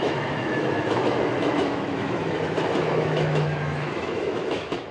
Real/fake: fake